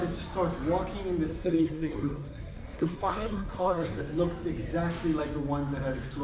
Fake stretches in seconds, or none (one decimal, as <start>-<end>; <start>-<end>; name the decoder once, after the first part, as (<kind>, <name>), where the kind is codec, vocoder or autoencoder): 1.3-4.0 (codec, SNAC)